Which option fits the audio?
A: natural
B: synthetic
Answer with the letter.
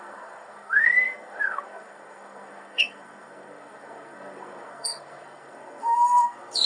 B